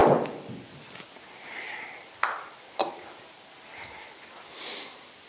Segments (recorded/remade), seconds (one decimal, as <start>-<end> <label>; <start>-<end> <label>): 0.0-5.3 recorded